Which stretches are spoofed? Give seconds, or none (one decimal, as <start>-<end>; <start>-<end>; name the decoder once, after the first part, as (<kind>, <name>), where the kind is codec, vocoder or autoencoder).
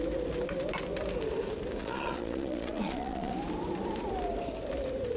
1.8-3.3 (vocoder, Vocos)